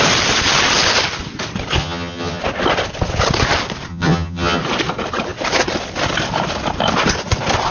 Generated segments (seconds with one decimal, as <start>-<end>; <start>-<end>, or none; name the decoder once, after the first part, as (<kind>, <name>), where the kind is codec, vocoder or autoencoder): 1.8-2.4 (vocoder, HiFi-GAN); 3.9-4.6

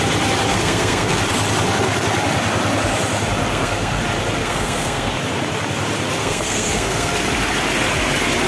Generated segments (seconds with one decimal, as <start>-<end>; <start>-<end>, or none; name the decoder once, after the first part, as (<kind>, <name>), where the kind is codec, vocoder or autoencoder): 0.5-1.2 (codec, SNAC); 3.5-4.0; 4.4-5.1; 6.2-7.1